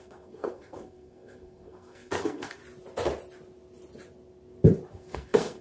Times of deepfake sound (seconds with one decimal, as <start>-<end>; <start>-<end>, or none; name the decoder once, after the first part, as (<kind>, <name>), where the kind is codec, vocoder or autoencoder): 0.0-2.6 (codec, SNAC); 4.9-5.6